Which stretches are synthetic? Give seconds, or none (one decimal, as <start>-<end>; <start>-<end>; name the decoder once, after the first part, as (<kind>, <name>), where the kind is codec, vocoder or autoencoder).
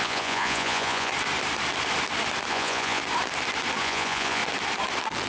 0.0-1.1 (vocoder, Vocos); 2.5-3.0; 3.8-4.4